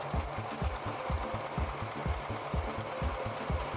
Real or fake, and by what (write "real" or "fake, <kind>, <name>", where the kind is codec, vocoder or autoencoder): real